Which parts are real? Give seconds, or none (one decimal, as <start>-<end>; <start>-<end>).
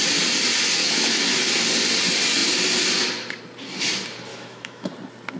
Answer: 0.0-0.8; 1.4-4.3; 4.9-5.4